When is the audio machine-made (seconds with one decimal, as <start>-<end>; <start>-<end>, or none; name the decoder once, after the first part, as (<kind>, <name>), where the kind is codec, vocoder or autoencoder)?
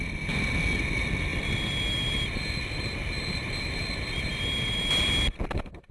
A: 1.3-4.8 (vocoder, BigVGAN v2)